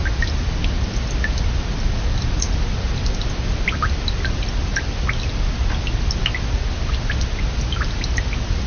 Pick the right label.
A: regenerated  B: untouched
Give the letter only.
B